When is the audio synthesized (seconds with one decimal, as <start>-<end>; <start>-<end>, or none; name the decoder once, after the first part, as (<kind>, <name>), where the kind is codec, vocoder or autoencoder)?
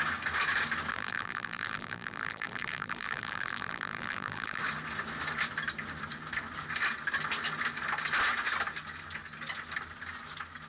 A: 0.9-4.6 (vocoder, BigVGAN v2)